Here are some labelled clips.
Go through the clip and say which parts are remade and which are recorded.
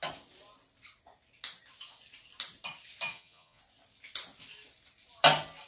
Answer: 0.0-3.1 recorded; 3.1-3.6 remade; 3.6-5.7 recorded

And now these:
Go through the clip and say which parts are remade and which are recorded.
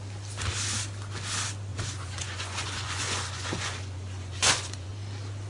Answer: 0.0-1.7 recorded; 1.7-4.9 remade; 4.9-5.5 recorded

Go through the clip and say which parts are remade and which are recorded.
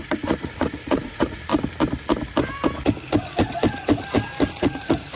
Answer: 0.0-1.5 remade; 1.5-4.5 recorded; 4.5-5.2 remade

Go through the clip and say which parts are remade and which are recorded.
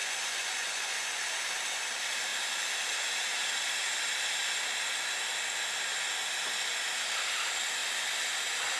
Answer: 0.0-1.2 remade; 1.2-8.8 recorded